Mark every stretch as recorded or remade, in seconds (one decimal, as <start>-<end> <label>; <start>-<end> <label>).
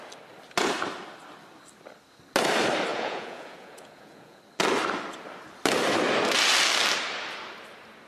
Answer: 0.0-2.9 recorded; 2.9-4.4 remade; 4.4-8.1 recorded